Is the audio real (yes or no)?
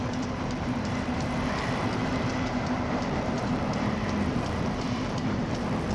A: no